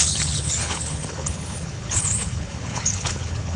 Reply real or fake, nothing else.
fake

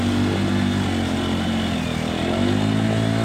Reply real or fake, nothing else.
real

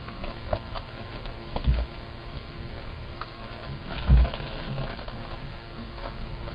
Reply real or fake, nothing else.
fake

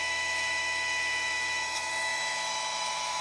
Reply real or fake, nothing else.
fake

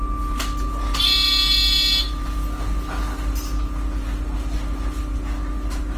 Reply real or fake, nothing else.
real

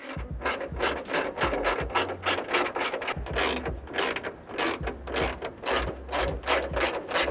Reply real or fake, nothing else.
real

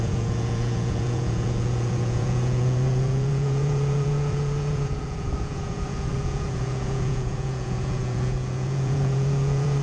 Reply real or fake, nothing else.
fake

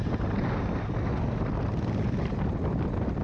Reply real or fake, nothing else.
real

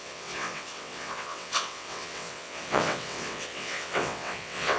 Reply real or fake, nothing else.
fake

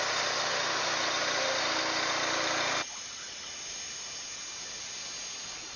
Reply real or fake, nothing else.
real